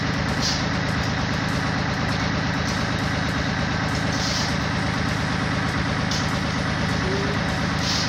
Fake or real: real